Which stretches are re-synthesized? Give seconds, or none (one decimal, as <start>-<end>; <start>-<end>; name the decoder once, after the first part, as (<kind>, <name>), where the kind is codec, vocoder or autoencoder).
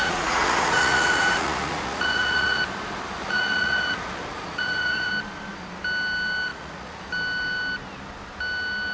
0.0-2.6 (vocoder, Vocos); 3.2-5.1; 6.5-7.0